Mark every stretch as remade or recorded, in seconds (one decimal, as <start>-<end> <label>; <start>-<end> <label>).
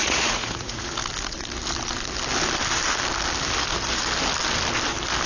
0.0-0.9 remade; 0.9-5.3 recorded